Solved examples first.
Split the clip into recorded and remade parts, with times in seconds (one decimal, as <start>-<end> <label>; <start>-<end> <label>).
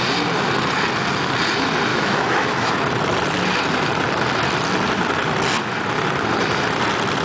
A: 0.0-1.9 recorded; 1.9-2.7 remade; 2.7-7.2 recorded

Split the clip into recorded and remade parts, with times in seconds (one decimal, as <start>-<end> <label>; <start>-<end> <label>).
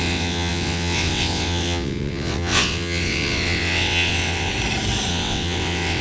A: 0.0-4.5 remade; 4.5-5.1 recorded; 5.1-6.0 remade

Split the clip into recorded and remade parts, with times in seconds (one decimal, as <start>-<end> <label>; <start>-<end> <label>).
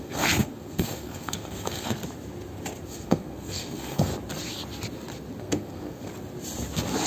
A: 0.0-2.0 remade; 2.0-2.9 recorded; 2.9-4.1 remade; 4.1-5.4 recorded; 5.4-6.1 remade; 6.1-7.1 recorded